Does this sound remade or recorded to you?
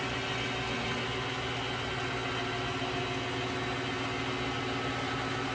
recorded